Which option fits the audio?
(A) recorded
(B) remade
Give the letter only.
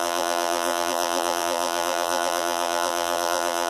B